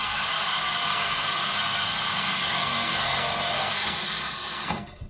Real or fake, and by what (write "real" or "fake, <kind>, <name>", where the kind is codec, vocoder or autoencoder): fake, codec, SNAC